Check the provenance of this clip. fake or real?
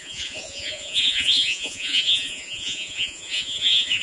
fake